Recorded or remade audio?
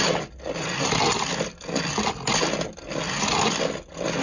recorded